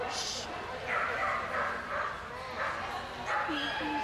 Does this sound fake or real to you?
real